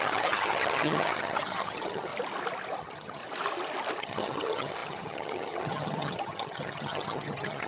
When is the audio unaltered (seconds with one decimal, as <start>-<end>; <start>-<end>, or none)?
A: 2.1-2.8; 3.2-4.0